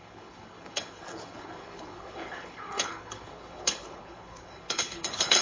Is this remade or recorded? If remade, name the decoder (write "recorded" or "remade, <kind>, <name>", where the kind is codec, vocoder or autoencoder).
remade, codec, HILCodec